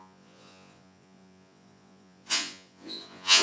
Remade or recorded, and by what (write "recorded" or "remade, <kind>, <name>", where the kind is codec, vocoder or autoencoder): remade, vocoder, Vocos